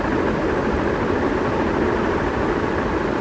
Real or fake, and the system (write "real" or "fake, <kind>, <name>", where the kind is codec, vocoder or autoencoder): real